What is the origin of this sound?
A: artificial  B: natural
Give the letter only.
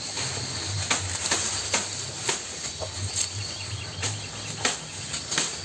B